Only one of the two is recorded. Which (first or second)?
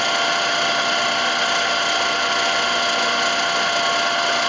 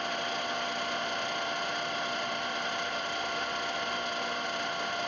first